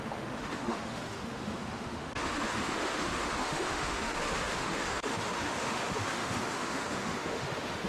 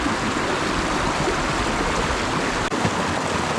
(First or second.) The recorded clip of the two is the second